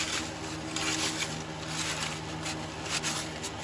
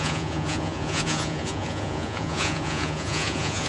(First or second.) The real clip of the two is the first